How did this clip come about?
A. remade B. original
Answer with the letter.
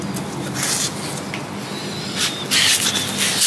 B